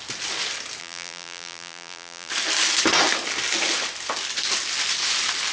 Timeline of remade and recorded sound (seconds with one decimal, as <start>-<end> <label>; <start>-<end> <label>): 0.0-0.8 recorded; 0.8-2.3 remade; 2.3-5.5 recorded